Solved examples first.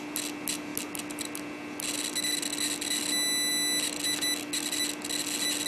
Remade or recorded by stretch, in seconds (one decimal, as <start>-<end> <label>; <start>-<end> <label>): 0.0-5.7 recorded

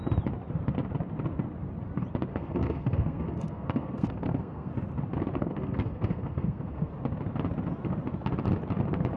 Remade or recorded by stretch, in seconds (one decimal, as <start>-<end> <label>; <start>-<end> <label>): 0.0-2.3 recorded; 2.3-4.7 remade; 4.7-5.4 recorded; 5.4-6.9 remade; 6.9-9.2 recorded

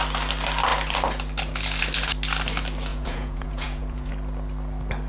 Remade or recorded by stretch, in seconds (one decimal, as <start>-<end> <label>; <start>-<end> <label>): 0.0-2.9 recorded; 2.9-4.1 remade; 4.1-5.1 recorded